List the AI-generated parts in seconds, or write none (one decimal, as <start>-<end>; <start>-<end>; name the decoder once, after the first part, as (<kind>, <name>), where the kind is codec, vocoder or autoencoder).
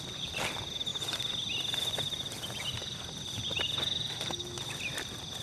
none